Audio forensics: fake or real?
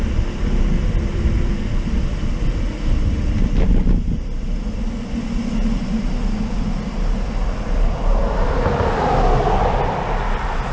real